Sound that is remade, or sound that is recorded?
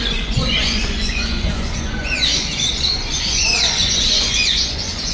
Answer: remade